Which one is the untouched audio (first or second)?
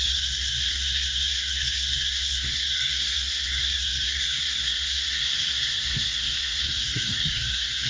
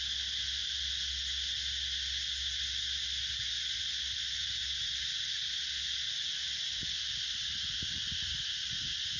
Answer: second